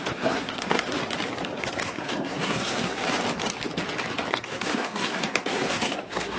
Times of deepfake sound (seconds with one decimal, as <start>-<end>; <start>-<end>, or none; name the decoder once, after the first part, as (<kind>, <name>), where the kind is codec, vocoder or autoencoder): 0.0-1.0 (codec, SNAC); 1.6-3.0; 4.3-6.4